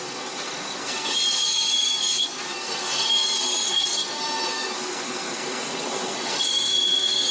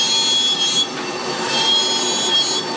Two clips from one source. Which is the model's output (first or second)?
first